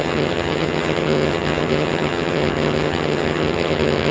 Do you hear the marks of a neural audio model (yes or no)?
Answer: yes